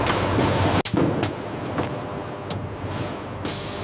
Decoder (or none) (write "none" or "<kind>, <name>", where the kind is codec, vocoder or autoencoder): none